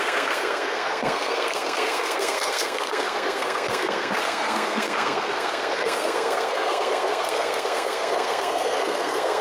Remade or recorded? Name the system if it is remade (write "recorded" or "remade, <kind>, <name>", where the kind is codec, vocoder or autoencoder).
remade, codec, SNAC